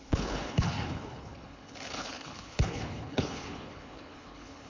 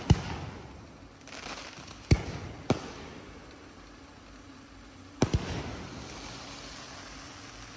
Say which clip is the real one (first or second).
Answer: second